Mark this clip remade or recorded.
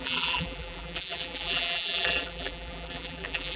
remade